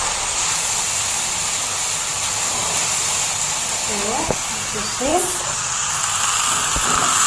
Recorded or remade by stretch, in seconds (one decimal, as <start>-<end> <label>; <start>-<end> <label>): 0.0-0.8 remade; 0.8-5.1 recorded; 5.1-5.9 remade; 5.9-7.3 recorded